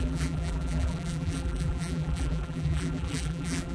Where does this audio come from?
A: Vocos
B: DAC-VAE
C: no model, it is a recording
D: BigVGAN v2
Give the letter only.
D